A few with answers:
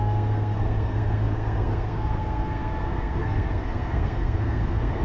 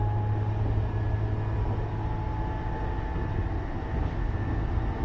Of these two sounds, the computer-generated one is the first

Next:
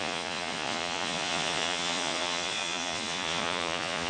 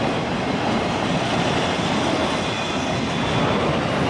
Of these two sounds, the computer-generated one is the first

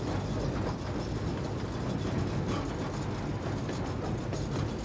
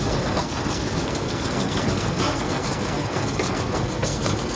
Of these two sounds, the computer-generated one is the second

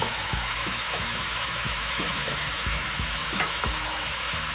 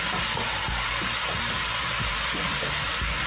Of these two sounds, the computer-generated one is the first